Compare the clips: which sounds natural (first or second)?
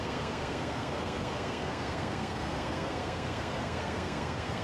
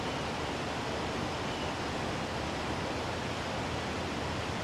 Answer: second